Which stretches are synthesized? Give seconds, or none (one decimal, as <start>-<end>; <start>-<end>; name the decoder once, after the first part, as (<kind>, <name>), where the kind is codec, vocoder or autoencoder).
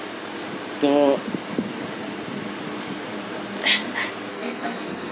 4.3-5.1 (codec, SNAC)